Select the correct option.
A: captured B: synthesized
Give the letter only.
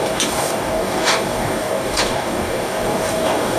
B